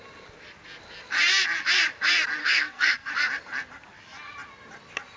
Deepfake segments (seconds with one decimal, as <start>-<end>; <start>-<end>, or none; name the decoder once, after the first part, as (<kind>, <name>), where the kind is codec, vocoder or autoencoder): 2.4-3.1 (codec, SNAC)